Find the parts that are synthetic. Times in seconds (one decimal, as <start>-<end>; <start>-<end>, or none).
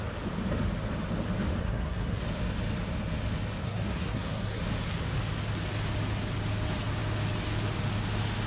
1.6-2.2; 3.6-4.6